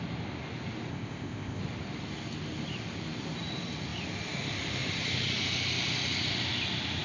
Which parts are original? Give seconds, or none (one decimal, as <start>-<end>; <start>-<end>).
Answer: 0.0-0.9; 1.6-7.0